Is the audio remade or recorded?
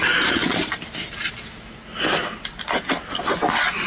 recorded